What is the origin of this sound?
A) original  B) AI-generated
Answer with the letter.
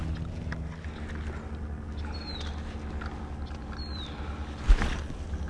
A